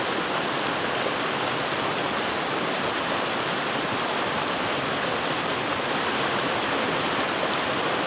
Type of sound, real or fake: real